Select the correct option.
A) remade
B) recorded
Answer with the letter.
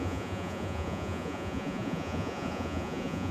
A